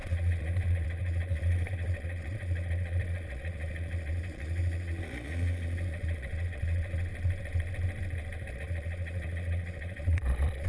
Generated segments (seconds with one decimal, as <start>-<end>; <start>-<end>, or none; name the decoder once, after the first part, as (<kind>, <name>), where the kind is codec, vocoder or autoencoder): 0.0-7.1 (vocoder, Vocos); 8.5-10.7